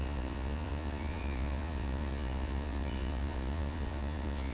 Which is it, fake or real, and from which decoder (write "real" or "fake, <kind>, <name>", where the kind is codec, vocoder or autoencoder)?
fake, vocoder, Vocos